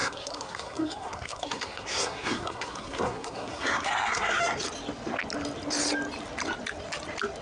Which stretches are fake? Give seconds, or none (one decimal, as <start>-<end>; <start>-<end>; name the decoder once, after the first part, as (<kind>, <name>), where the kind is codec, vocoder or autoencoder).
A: 0.0-4.4 (codec, SNAC)